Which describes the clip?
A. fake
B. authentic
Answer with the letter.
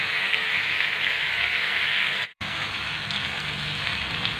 A